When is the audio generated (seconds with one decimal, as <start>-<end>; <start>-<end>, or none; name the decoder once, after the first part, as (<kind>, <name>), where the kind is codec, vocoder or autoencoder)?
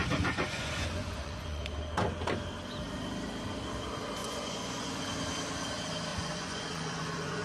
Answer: 0.0-1.6 (vocoder, Vocos); 4.2-5.1; 6.1-7.4